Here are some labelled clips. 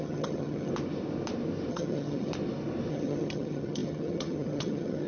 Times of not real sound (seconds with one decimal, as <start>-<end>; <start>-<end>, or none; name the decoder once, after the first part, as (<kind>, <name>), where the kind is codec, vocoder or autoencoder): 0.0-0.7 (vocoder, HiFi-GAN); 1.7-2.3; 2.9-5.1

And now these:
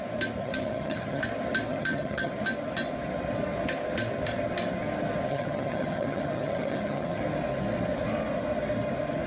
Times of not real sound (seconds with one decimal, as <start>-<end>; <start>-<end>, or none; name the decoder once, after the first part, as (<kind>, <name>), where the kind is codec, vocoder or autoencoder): 0.4-1.2 (vocoder, HiFi-GAN); 1.7-2.3; 5.3-7.2

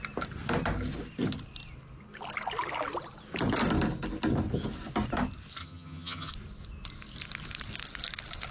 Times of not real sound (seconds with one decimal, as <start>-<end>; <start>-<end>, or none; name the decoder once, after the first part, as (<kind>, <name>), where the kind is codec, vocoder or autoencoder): 5.6-6.3 (vocoder, HiFi-GAN)

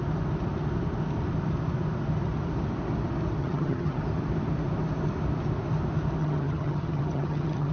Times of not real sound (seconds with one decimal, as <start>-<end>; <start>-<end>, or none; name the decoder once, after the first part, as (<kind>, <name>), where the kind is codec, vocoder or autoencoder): 3.4-4.0 (vocoder, HiFi-GAN); 6.2-7.7

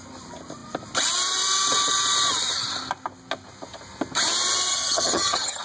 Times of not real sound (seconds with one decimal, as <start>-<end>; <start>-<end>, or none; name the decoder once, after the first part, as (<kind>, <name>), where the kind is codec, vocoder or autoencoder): 4.7-5.6 (vocoder, HiFi-GAN)

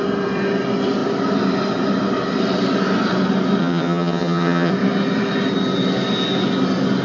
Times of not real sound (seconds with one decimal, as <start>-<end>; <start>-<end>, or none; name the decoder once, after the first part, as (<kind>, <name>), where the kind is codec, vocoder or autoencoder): 3.6-4.7 (vocoder, HiFi-GAN)

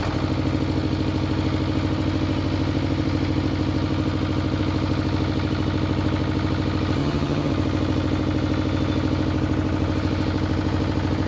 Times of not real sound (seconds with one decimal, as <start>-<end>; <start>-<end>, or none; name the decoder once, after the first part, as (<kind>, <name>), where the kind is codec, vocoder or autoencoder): 7.0-7.5 (vocoder, HiFi-GAN)

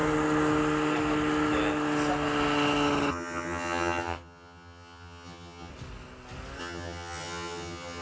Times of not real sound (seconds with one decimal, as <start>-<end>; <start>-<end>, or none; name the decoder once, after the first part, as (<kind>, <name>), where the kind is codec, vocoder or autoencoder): 3.1-5.7 (vocoder, HiFi-GAN); 6.6-8.0